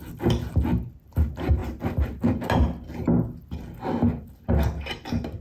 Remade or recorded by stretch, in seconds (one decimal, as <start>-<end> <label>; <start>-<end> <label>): 0.0-5.4 recorded